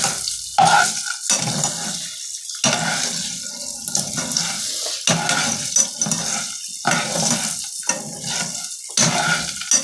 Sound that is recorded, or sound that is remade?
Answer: recorded